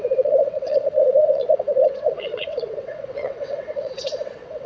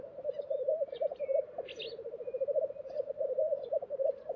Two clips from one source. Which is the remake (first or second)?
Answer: first